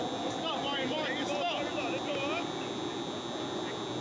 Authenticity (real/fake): real